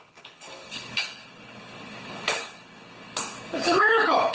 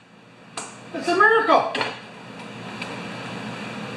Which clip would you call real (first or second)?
second